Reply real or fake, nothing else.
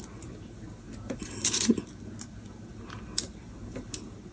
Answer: real